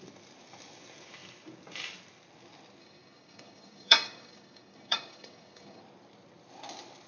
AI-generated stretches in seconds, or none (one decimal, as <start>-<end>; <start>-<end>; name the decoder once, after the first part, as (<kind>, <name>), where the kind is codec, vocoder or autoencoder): 2.8-5.8 (codec, DAC)